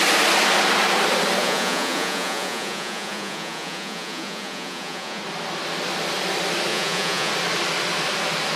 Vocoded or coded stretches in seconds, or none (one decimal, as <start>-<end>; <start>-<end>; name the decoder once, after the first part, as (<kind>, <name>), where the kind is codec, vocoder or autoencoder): 1.4-5.2 (vocoder, Vocos); 6.7-7.3